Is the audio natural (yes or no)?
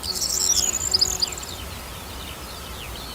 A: yes